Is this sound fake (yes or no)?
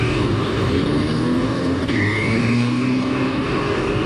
yes